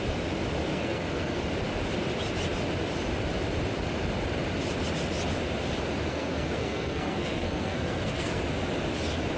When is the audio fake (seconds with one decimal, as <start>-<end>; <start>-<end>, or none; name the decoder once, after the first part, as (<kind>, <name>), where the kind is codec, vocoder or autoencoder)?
0.7-1.4 (codec, SNAC); 6.1-8.4